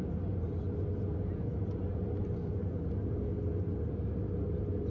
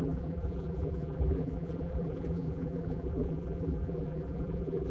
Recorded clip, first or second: first